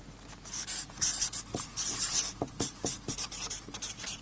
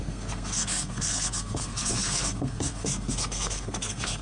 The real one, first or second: first